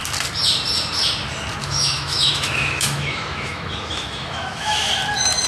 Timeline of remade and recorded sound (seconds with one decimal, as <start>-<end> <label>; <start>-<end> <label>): 0.0-1.6 recorded; 1.6-4.9 remade; 4.9-5.5 recorded